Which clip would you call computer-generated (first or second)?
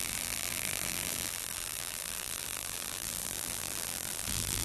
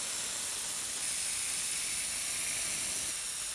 first